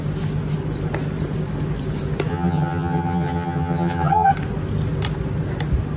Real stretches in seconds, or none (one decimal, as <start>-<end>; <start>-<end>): 0.0-2.3; 4.3-6.0